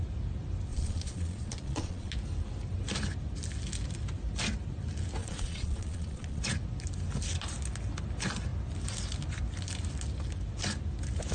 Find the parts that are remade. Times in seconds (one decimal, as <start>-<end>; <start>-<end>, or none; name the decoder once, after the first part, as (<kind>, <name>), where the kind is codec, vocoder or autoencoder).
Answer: 0.7-2.1 (vocoder, Vocos); 5.2-6.4

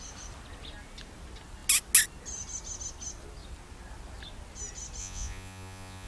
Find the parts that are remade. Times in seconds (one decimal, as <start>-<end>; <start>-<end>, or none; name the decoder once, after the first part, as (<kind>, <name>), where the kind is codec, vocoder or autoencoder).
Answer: 5.0-6.1 (vocoder, Vocos)

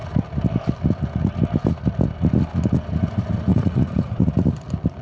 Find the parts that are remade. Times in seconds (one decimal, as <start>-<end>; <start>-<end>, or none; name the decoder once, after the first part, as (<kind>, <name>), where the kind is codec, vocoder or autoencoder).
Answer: 3.5-4.3 (vocoder, Vocos)

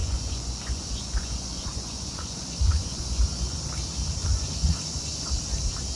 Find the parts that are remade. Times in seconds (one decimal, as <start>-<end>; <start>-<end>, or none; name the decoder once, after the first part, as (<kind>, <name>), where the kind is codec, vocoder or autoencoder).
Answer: 0.0-3.6 (vocoder, Vocos); 4.2-5.3

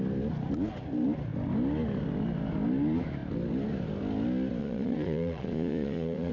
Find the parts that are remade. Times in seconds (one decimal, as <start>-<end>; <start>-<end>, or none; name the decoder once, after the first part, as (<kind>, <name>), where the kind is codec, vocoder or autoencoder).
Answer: 4.6-6.3 (vocoder, Vocos)

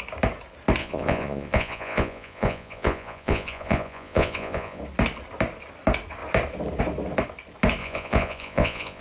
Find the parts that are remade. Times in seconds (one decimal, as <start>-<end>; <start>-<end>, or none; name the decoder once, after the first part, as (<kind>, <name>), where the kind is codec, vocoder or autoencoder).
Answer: 0.8-4.8 (vocoder, Vocos); 7.8-9.0

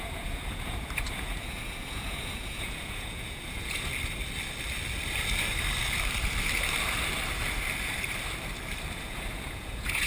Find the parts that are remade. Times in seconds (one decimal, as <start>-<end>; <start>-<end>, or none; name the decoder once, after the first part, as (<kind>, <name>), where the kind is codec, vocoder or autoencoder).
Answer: 0.0-3.9 (vocoder, Vocos); 8.9-10.1